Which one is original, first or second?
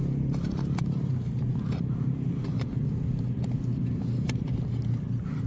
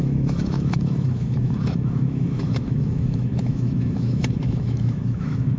first